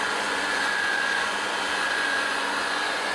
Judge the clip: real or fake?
fake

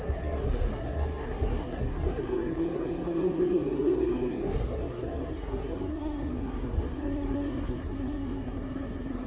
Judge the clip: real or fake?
fake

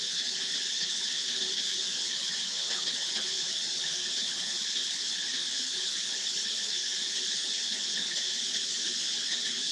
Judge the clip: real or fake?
fake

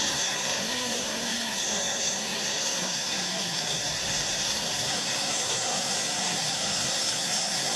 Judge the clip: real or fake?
fake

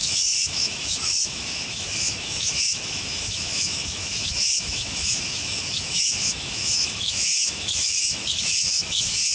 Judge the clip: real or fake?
fake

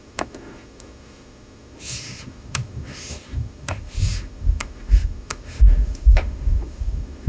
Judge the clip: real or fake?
fake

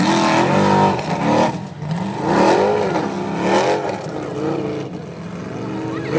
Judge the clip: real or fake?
real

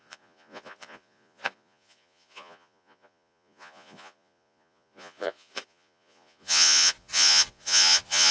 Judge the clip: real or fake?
fake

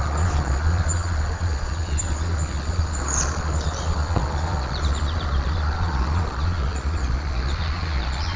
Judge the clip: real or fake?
fake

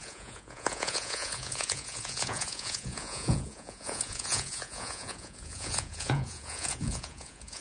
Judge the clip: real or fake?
fake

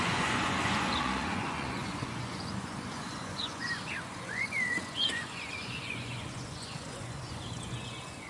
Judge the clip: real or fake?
fake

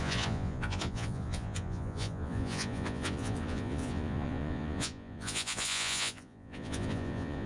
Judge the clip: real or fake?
fake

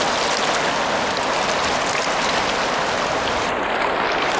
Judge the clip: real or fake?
real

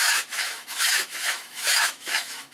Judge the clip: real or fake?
fake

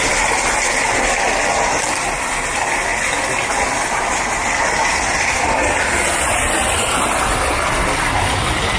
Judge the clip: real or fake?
real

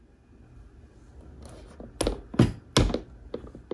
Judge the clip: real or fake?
real